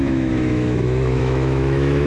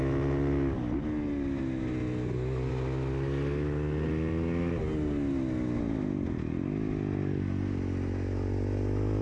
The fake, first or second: first